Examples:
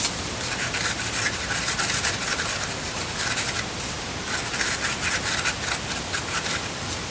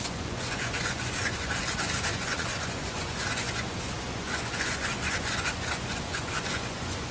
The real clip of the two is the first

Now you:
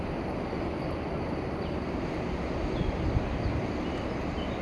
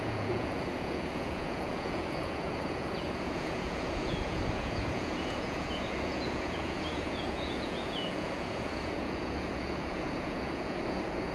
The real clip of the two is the first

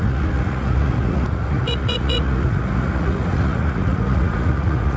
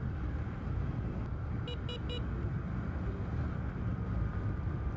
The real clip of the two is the second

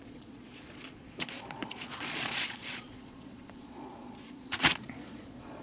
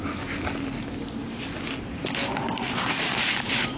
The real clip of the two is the second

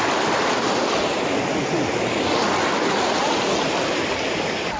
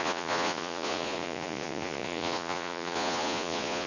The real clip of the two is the first